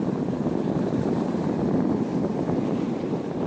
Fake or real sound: fake